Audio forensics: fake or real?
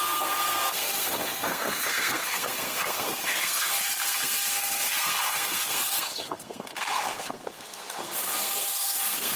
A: fake